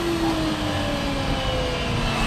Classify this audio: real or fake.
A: real